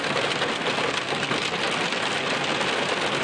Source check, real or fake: real